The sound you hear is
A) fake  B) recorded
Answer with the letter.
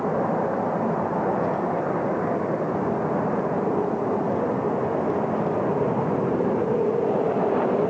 B